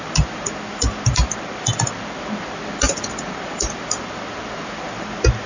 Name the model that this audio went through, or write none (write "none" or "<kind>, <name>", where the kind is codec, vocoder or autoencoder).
none